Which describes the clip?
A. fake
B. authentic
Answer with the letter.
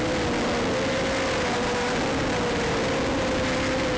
B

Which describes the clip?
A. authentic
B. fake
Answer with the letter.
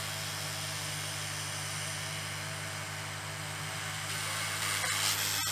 A